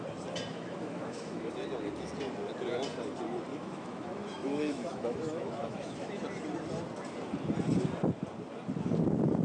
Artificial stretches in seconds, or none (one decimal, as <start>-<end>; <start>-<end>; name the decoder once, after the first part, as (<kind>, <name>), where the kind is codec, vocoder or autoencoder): 0.5-1.5 (autoencoder, DAC-VAE); 3.5-6.2